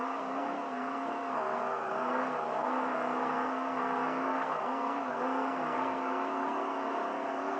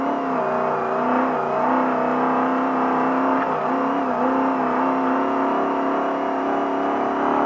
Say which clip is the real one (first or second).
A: second